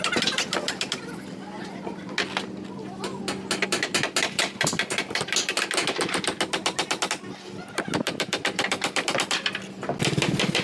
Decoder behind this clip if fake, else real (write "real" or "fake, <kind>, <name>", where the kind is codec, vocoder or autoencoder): real